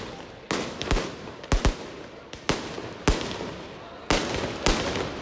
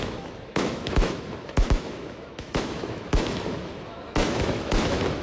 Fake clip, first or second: second